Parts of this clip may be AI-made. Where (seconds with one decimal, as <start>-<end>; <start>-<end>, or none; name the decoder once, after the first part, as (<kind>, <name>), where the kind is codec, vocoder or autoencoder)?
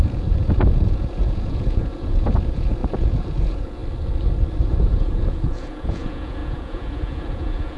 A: 0.0-3.8 (vocoder, Vocos); 4.7-7.8